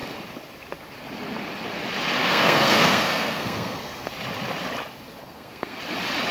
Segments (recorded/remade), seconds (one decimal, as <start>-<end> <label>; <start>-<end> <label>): 0.0-2.2 recorded; 2.2-4.1 remade; 4.1-5.2 recorded; 5.2-5.8 remade; 5.8-6.3 recorded